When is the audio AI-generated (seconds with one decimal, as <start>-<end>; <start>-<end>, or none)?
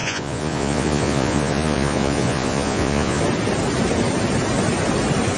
0.0-3.2